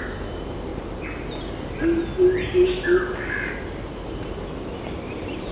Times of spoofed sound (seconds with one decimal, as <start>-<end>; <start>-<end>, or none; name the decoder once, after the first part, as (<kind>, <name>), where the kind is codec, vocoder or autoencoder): none